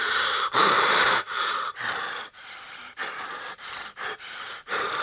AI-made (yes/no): yes